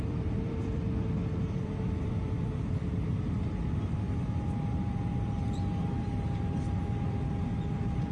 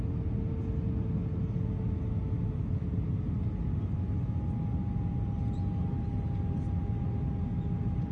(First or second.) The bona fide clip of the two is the second